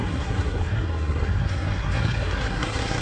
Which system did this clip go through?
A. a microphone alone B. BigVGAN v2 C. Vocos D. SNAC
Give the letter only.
D